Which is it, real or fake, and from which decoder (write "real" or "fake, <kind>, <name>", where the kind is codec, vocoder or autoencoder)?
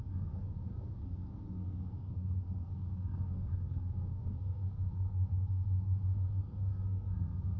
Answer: fake, codec, SNAC